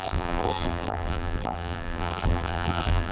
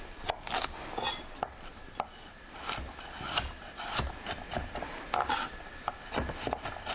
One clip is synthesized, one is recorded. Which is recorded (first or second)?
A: second